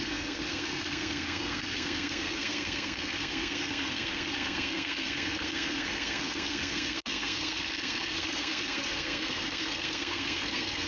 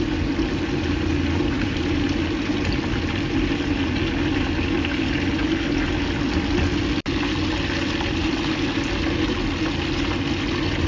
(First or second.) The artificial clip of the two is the first